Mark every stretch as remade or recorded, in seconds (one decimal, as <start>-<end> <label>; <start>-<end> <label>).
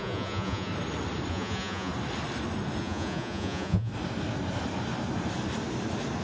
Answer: 0.0-0.7 remade; 0.7-1.3 recorded; 1.3-1.9 remade; 1.9-2.8 recorded; 2.8-3.9 remade; 3.9-6.2 recorded